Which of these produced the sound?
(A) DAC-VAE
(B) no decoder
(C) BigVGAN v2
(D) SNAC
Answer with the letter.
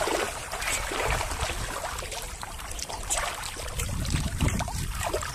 C